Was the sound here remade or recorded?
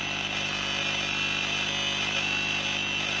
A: recorded